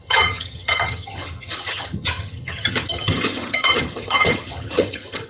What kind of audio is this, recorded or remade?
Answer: remade